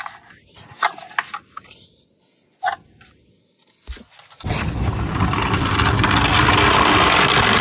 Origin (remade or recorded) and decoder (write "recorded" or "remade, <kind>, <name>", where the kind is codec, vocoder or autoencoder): recorded